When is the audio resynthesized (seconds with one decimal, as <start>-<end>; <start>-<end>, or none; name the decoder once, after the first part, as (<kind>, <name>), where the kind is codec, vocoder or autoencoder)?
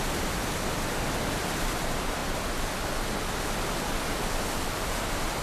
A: none